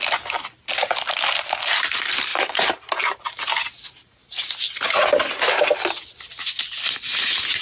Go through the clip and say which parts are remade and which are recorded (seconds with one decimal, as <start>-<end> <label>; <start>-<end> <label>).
0.0-2.3 recorded; 2.3-4.5 remade; 4.5-7.6 recorded